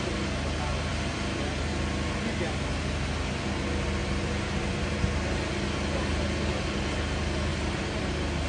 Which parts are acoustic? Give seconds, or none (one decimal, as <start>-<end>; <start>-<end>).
0.0-4.0; 5.0-7.5; 8.0-8.5